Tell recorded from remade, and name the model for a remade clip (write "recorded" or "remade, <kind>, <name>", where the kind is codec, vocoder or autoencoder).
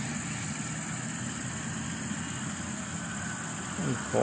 recorded